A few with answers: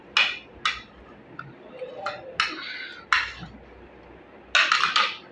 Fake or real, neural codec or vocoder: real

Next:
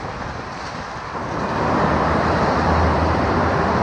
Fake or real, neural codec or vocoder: fake, vocoder, BigVGAN v2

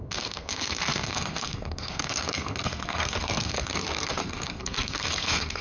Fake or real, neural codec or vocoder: fake, codec, SNAC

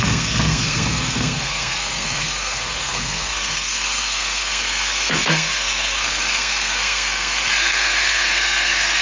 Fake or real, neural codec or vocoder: fake, codec, SNAC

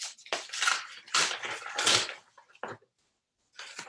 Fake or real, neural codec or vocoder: real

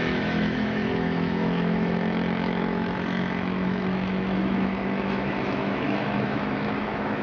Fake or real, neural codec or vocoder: fake, autoencoder, DAC-VAE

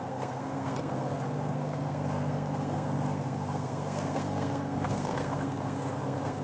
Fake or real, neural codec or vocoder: fake, codec, SNAC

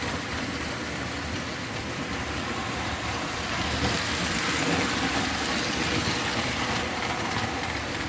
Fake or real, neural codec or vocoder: real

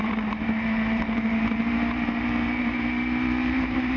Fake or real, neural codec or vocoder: fake, vocoder, BigVGAN v2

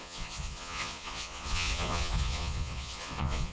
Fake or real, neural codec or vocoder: fake, vocoder, Vocos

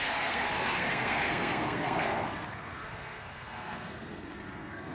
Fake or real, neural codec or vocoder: fake, codec, SNAC